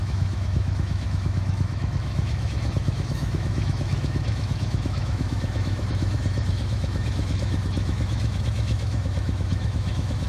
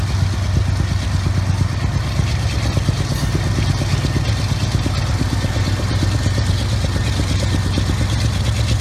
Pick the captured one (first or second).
second